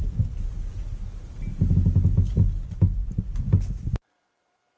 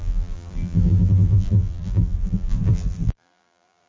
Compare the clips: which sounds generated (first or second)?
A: second